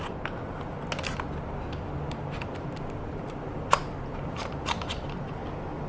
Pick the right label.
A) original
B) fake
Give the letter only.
A